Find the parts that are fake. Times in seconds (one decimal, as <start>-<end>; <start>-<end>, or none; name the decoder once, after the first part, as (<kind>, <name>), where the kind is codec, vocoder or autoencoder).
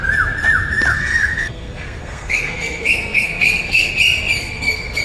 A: 0.9-3.9 (codec, SNAC); 4.4-5.0